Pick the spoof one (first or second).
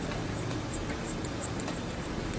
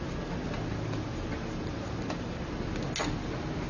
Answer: first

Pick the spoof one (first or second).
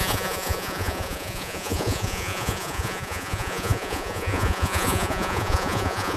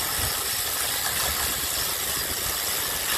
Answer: first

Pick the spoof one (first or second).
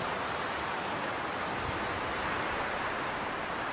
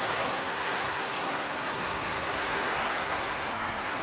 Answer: second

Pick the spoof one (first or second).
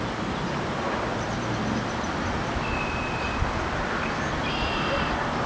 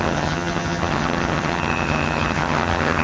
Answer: second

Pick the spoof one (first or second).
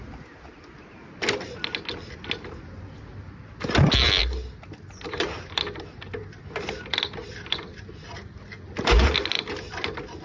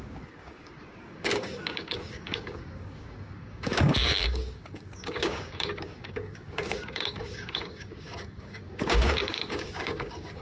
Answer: second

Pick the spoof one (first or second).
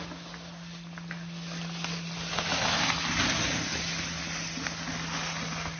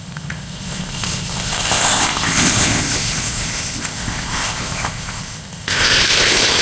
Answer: second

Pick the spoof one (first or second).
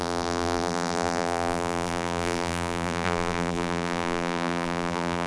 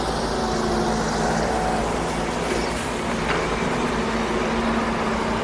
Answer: first